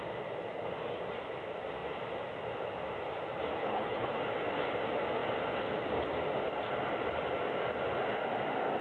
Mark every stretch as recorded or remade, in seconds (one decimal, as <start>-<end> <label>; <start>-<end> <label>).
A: 0.0-3.6 recorded; 3.6-4.2 remade; 4.2-8.8 recorded